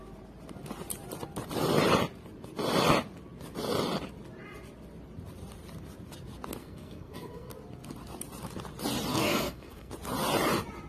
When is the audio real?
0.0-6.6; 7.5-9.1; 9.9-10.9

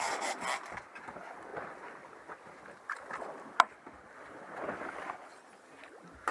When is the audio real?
0.0-6.3

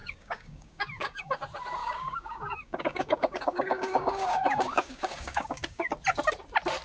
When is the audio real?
1.4-1.8; 5.9-6.8

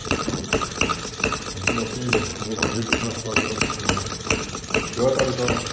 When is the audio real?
0.5-2.3; 3.5-5.7

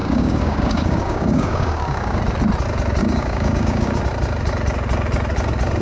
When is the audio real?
2.2-3.0; 4.0-5.8